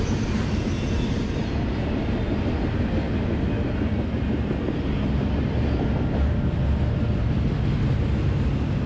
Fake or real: real